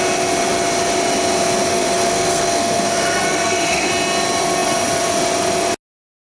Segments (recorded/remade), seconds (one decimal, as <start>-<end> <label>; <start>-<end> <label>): 0.0-1.7 recorded; 1.7-3.9 remade; 3.9-6.2 recorded

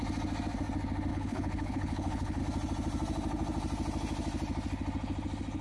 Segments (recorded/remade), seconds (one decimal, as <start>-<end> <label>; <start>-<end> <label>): 0.0-1.1 recorded; 1.1-2.4 remade; 2.4-5.6 recorded

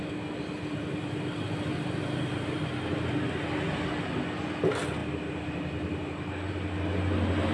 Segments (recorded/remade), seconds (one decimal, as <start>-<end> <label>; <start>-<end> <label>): 0.0-7.5 recorded

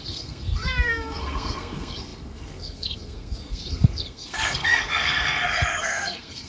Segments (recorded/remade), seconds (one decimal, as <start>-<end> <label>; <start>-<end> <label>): 0.0-6.5 remade

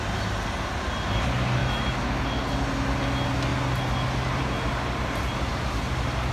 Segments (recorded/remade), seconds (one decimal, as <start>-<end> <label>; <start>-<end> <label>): 0.0-1.6 recorded; 1.6-2.2 remade; 2.2-6.3 recorded